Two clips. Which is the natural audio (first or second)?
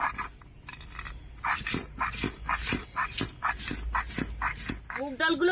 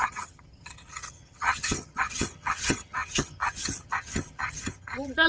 first